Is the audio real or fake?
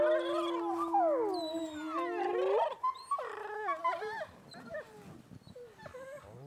real